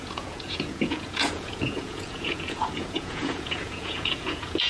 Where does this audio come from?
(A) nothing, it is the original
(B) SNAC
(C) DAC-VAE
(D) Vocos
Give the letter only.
D